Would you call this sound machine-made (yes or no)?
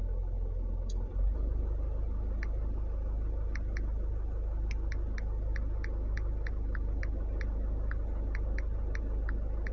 no